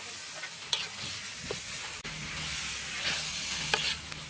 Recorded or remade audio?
recorded